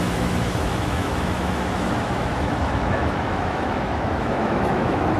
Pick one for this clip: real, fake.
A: fake